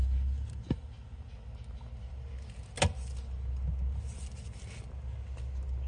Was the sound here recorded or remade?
recorded